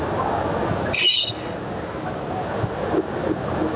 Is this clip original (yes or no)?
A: yes